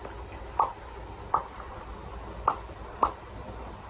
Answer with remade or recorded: recorded